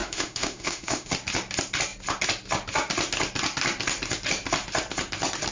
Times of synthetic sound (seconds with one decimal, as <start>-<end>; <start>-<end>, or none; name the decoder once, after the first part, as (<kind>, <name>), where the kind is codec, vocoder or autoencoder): 0.0-1.1 (autoencoder, DAC-VAE)